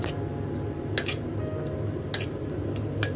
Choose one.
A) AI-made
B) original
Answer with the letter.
B